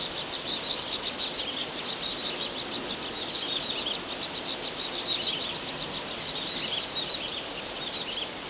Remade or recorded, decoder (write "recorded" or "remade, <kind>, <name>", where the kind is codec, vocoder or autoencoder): recorded